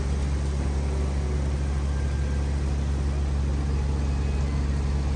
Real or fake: real